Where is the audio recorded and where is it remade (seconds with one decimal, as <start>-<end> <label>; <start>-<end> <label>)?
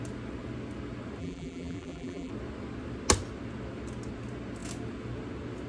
0.0-1.2 recorded; 1.2-2.3 remade; 2.3-5.7 recorded